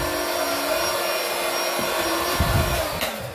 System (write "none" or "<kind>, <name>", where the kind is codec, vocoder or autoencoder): none